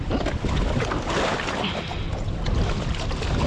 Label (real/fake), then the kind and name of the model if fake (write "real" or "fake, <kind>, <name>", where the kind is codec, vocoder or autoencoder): real